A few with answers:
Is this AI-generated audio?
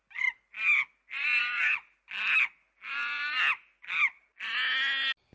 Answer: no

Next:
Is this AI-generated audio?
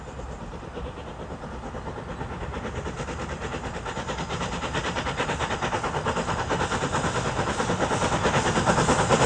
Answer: no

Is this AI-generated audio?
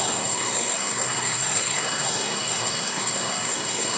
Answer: yes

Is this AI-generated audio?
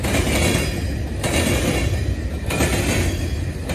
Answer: no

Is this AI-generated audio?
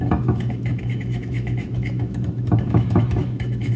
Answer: yes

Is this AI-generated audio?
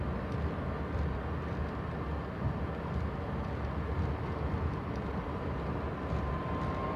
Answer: no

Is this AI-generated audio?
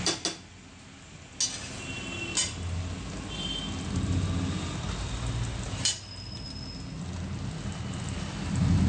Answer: no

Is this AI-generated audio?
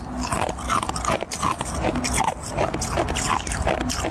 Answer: no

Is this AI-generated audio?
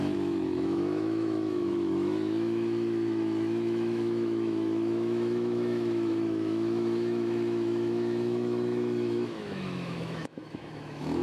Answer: yes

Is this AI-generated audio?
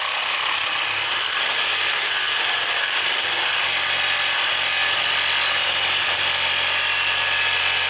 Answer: no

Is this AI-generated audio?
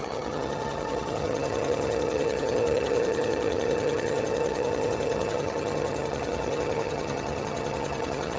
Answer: yes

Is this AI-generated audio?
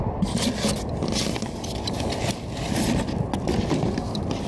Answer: no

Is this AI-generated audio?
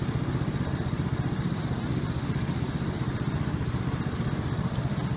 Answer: no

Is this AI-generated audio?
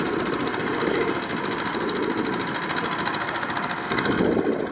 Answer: no